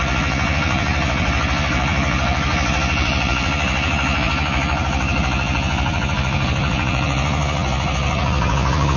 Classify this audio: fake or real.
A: fake